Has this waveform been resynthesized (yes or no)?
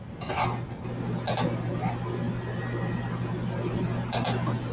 no